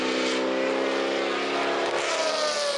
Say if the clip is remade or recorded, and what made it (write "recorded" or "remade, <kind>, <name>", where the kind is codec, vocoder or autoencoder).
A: recorded